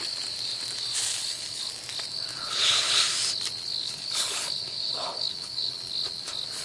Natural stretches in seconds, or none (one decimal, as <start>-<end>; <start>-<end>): 0.0-1.1; 1.7-2.3; 3.0-3.8; 5.8-6.6